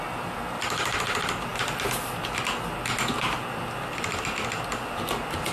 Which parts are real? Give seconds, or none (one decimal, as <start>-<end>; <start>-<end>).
0.0-5.5